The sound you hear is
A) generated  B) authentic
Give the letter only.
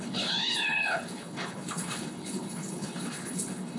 A